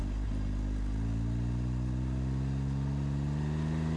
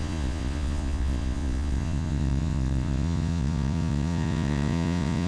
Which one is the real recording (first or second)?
first